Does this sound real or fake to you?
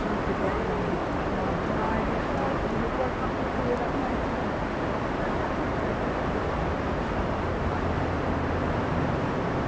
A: fake